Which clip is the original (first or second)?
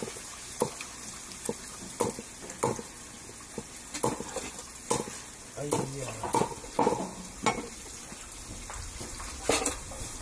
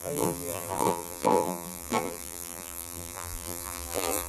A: first